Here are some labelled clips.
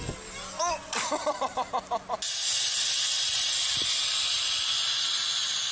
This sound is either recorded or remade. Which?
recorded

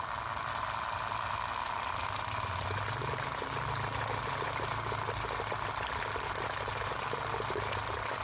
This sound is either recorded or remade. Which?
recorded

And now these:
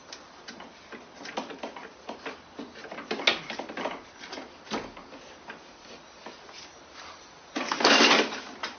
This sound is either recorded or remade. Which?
recorded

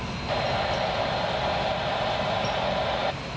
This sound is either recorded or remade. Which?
recorded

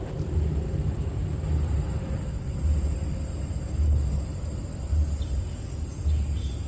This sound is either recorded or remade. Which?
recorded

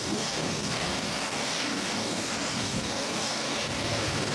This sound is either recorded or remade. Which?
remade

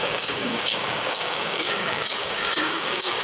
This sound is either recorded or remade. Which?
remade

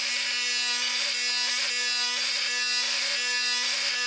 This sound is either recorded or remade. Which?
recorded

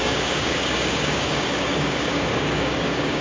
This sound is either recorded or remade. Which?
remade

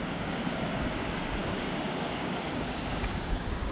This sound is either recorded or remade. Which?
remade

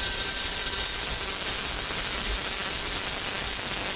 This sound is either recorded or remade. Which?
recorded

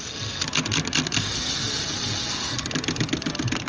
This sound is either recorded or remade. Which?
recorded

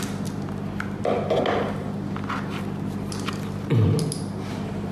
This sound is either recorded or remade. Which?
recorded